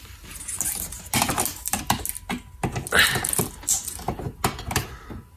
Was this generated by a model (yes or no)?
no